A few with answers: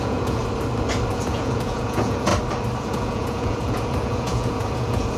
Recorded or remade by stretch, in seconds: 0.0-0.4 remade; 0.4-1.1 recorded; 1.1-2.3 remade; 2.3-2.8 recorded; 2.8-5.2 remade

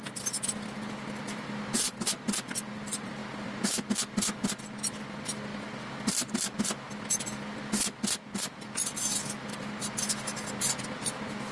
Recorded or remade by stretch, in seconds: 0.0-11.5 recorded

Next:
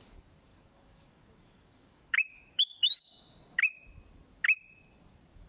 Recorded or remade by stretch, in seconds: 0.0-0.5 recorded; 0.5-3.1 remade; 3.1-5.5 recorded

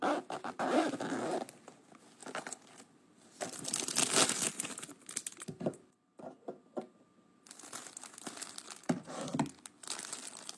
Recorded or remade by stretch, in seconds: 0.0-10.6 recorded

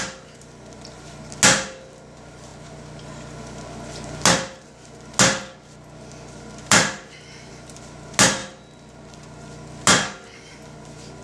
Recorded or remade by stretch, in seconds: 0.0-11.2 recorded